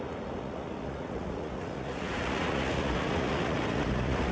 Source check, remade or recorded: remade